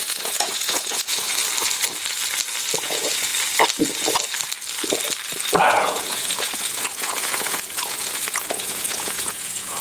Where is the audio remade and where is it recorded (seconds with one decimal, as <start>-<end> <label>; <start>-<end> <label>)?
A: 0.0-1.3 remade; 1.3-2.8 recorded; 2.8-3.3 remade; 3.3-5.6 recorded; 5.6-9.8 remade

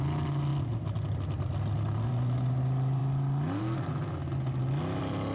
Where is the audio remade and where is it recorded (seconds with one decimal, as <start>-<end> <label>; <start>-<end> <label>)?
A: 0.0-5.3 recorded

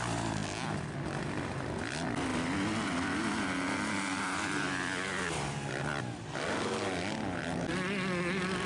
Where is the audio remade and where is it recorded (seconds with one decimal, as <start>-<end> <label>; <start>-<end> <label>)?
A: 0.0-8.7 recorded